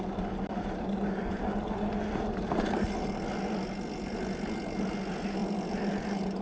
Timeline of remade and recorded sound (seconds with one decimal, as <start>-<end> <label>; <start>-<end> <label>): 0.0-5.4 recorded; 5.4-6.0 remade; 6.0-6.4 recorded